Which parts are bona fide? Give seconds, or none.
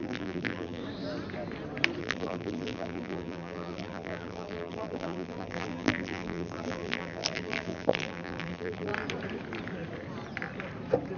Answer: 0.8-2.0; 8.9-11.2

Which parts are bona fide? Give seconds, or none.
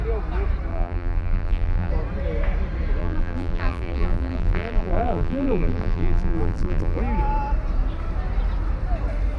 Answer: 0.0-0.7; 1.9-3.0; 7.0-9.4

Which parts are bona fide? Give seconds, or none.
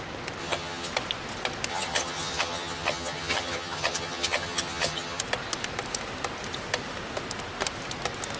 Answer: 0.0-0.4; 0.9-1.7; 5.2-8.4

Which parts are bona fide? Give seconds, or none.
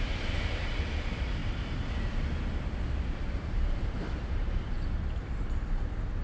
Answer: 1.4-1.9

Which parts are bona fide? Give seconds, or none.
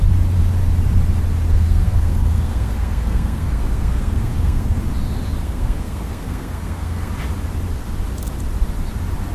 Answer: 0.0-1.5; 4.8-5.4; 7.1-9.3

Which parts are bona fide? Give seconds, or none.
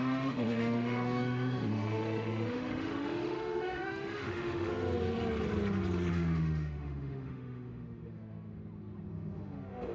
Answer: 4.7-6.1; 8.6-9.1